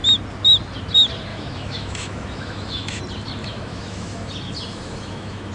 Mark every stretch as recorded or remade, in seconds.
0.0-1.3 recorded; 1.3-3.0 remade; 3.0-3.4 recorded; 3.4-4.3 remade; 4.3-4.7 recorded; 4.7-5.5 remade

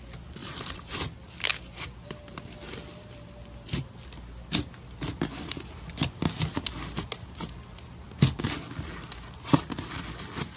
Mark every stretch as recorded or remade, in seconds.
0.0-0.4 recorded; 0.4-0.9 remade; 0.9-10.6 recorded

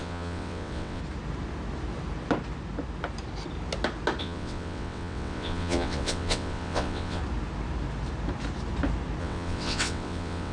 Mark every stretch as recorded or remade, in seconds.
0.0-1.0 remade; 1.0-4.2 recorded; 4.2-7.2 remade; 7.2-9.2 recorded; 9.2-10.5 remade

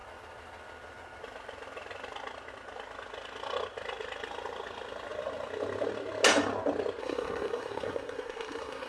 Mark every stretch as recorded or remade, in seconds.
0.0-7.0 recorded; 7.0-8.9 remade

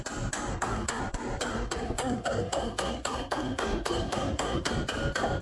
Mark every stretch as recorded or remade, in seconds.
0.0-0.5 recorded; 0.5-1.0 remade; 1.0-1.5 recorded; 1.5-4.7 remade; 4.7-5.4 recorded

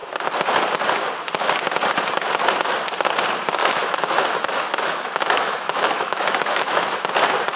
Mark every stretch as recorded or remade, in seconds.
0.0-3.6 recorded; 3.6-7.1 remade; 7.1-7.6 recorded